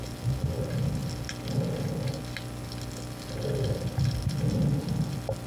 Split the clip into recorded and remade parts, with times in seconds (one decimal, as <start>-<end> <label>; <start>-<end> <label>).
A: 0.0-5.5 recorded